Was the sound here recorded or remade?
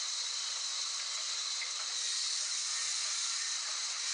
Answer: recorded